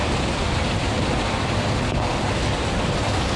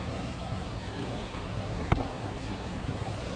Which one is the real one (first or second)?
first